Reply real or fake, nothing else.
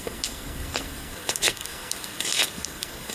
fake